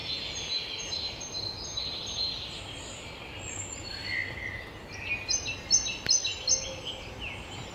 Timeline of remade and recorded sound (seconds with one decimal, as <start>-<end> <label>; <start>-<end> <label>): 0.0-7.7 recorded